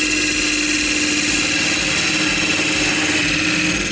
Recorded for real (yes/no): yes